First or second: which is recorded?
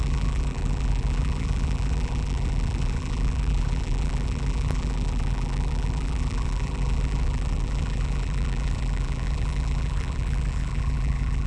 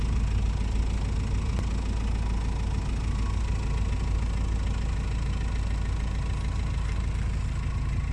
second